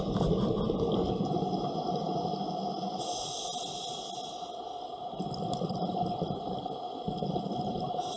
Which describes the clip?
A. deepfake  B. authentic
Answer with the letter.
B